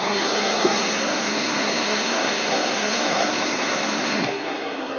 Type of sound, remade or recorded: remade